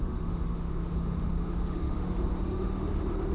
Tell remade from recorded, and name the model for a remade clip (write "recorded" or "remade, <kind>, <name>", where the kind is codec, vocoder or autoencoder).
remade, autoencoder, DAC-VAE